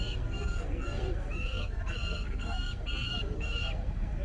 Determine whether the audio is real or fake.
fake